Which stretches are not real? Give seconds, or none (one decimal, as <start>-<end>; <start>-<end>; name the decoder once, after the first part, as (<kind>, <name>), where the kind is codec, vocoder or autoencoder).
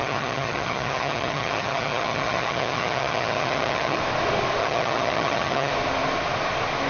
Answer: 0.0-4.0 (vocoder, HiFi-GAN); 4.6-5.7